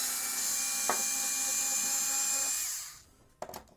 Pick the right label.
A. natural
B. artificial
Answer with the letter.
A